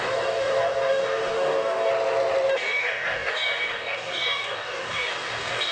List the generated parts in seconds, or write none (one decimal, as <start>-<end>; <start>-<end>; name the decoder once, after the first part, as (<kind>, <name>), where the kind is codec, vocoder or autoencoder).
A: 0.0-1.9 (codec, DAC); 2.5-5.7